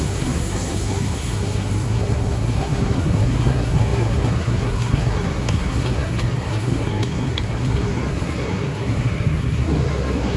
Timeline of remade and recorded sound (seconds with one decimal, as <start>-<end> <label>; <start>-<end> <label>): 0.0-10.4 remade